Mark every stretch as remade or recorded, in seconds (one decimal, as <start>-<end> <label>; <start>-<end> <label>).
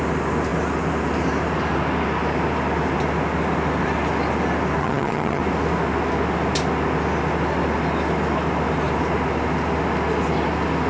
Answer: 0.0-4.8 recorded; 4.8-5.4 remade; 5.4-10.9 recorded